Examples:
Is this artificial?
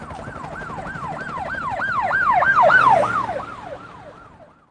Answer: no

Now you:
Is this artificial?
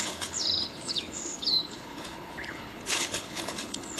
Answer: yes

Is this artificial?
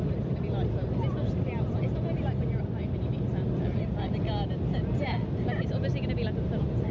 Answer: no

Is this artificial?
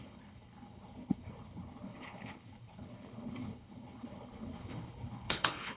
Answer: yes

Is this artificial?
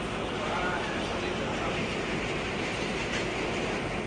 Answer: no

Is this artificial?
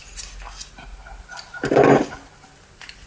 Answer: no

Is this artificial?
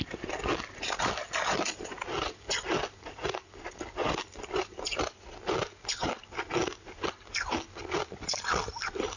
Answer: no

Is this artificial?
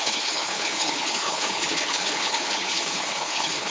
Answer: yes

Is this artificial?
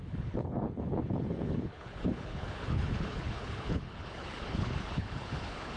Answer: yes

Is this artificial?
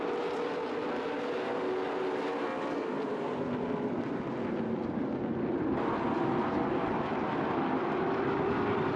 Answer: no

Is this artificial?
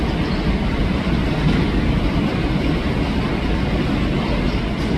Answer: no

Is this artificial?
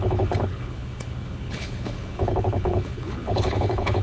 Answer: yes